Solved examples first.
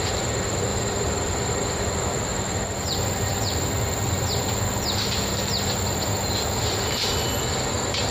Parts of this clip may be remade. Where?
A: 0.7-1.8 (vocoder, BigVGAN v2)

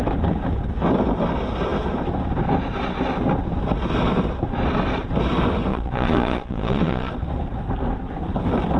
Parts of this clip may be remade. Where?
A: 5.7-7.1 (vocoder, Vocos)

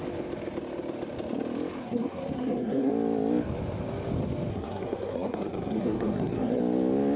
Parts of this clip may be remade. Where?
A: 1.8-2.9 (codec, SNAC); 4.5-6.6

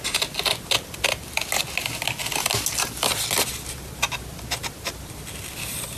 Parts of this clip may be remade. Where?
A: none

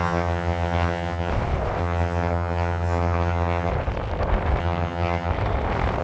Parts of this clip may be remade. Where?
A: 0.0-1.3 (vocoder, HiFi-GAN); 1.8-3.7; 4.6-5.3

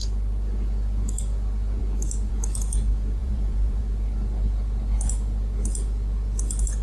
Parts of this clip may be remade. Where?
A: 3.2-3.8 (vocoder, Vocos)

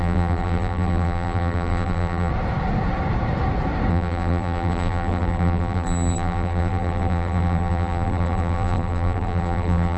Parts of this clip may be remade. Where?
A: 0.0-2.3 (vocoder, BigVGAN v2); 3.9-10.0